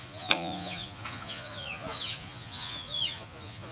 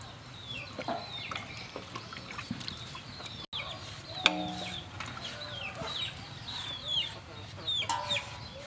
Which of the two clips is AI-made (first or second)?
first